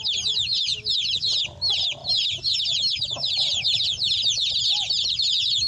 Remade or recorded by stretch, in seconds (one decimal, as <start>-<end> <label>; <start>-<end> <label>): 0.0-5.7 recorded